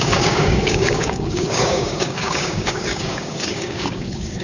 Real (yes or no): no